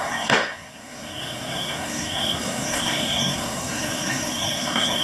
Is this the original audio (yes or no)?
no